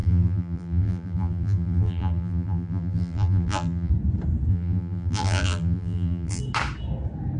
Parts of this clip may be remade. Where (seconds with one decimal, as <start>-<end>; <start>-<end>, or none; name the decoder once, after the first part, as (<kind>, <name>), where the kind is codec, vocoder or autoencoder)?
0.0-3.9 (vocoder, BigVGAN v2); 4.5-6.4